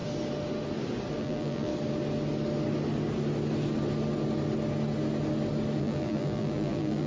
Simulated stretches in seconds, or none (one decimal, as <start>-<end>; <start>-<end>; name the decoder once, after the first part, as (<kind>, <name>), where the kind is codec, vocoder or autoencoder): 1.2-1.7 (vocoder, BigVGAN v2); 5.8-7.1